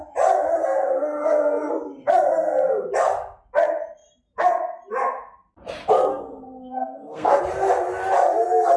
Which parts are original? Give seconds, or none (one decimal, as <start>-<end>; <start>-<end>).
0.0-1.0; 1.7-6.1; 7.4-8.8